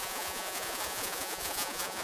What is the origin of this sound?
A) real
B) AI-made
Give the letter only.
B